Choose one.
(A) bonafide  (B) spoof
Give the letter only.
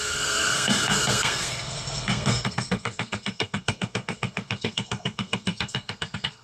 B